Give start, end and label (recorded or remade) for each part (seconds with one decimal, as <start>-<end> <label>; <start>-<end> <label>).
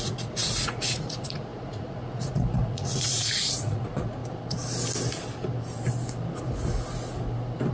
0.0-4.2 remade; 4.2-7.7 recorded